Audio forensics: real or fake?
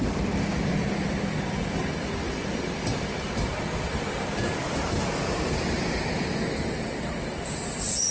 real